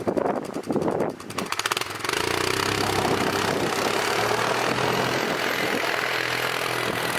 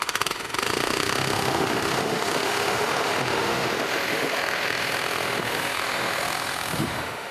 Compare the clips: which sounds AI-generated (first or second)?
second